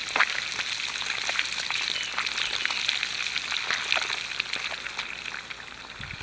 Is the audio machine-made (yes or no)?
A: no